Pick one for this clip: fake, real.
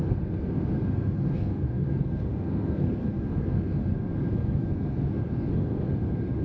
fake